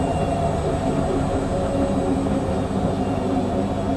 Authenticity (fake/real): real